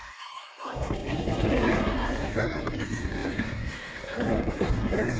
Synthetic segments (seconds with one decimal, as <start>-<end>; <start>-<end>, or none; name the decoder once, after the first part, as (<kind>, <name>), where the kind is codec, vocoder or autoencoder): 0.0-5.2 (codec, SNAC)